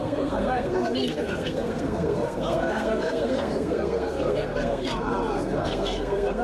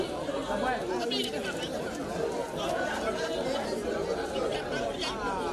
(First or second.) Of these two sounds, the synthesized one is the first